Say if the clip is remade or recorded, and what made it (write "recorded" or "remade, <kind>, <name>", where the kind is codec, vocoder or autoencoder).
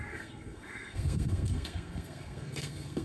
remade, codec, SNAC